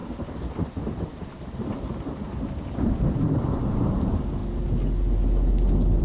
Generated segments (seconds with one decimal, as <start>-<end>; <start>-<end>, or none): 0.7-4.4